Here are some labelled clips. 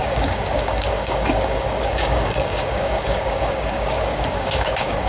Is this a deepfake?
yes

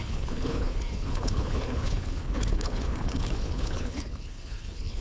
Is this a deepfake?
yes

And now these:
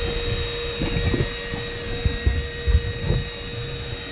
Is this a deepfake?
no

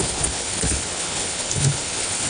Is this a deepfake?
yes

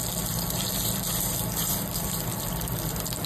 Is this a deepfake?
no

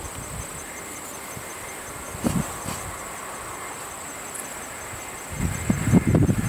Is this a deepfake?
no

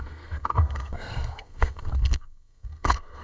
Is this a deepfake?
yes